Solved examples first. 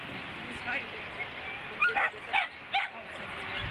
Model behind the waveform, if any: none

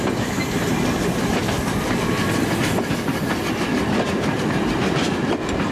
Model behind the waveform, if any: none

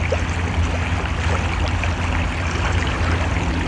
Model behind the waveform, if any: none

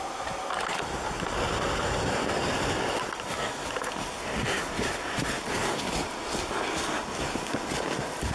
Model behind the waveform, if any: none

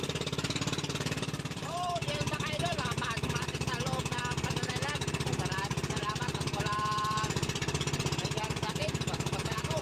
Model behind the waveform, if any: vocoder, BigVGAN v2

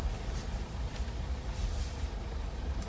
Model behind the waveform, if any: vocoder, BigVGAN v2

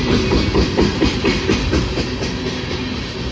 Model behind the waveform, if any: none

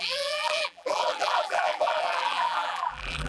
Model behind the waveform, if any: vocoder, BigVGAN v2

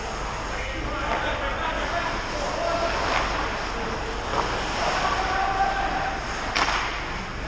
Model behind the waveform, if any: none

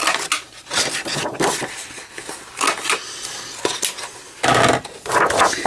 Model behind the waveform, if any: none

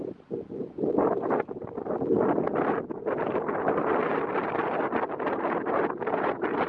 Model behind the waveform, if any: none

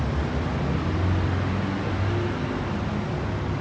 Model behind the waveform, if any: none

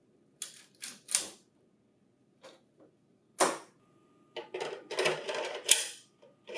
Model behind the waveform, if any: none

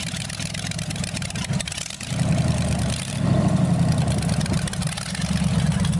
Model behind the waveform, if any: none